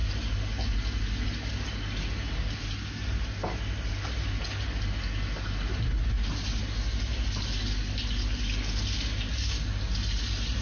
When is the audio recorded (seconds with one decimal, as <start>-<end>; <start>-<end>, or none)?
0.0-10.6